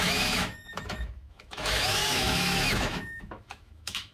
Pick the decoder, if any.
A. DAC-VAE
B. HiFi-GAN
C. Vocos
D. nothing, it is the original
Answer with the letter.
A